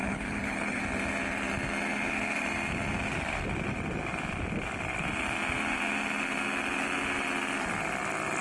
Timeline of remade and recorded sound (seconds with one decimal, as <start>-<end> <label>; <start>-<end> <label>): 0.0-0.8 remade; 0.8-8.4 recorded